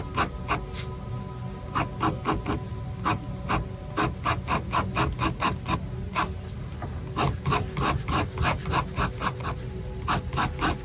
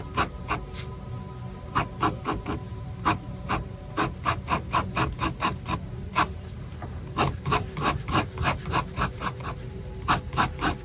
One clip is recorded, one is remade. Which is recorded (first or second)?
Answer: first